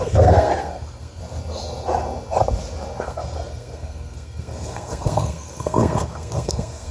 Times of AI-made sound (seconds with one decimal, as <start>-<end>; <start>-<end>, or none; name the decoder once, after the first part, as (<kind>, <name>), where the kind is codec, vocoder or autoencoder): 0.0-1.2 (codec, SNAC); 3.0-6.9